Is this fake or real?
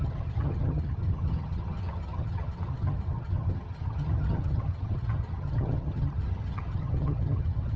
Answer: fake